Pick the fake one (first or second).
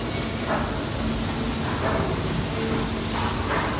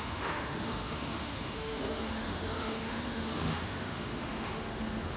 second